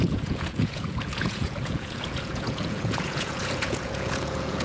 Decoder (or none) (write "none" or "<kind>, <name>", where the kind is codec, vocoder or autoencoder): vocoder, Vocos